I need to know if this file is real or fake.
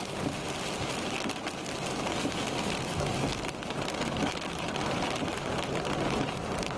real